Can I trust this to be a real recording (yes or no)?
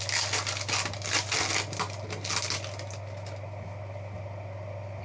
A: yes